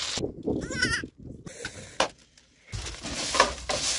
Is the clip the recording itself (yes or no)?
yes